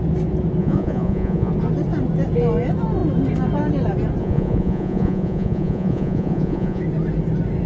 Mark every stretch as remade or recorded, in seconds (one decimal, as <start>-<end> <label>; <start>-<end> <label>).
0.0-0.6 recorded; 0.6-1.5 remade; 1.5-4.2 recorded; 4.2-6.8 remade; 6.8-7.7 recorded